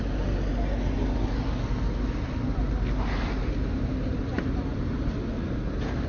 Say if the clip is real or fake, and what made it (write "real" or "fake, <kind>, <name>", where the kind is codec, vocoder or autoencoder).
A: real